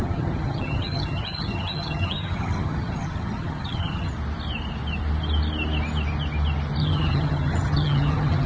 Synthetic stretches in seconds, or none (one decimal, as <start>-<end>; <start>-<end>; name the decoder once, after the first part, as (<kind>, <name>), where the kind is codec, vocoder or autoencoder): 0.0-4.1 (vocoder, HiFi-GAN); 6.8-8.5

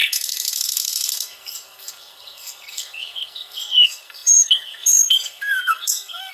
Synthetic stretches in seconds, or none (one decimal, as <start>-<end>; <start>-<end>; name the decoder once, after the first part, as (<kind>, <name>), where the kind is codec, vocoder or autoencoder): 0.0-6.3 (codec, SNAC)

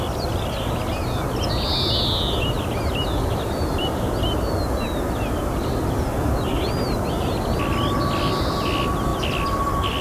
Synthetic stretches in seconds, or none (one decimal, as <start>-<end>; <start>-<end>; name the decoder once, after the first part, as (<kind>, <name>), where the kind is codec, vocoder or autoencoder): 9.1-10.0 (vocoder, BigVGAN v2)

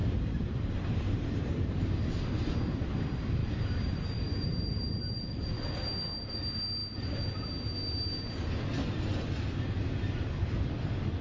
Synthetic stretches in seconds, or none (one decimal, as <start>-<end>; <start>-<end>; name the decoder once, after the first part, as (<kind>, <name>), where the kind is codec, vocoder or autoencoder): 0.0-1.8 (vocoder, BigVGAN v2); 3.4-5.0